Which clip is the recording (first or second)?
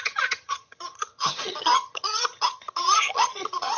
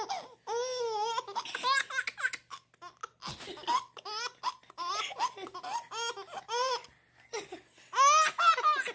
second